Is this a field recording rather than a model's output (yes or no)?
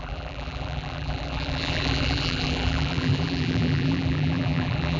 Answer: no